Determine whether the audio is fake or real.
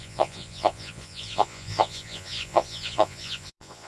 fake